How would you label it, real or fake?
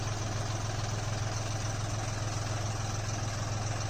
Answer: real